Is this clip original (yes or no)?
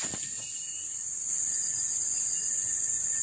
yes